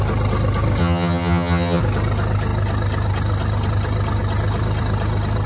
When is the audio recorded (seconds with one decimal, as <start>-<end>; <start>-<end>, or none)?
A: 0.0-0.8; 1.8-5.5